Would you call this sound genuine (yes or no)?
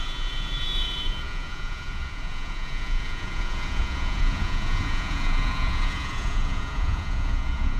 no